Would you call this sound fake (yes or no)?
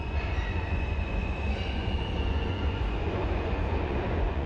yes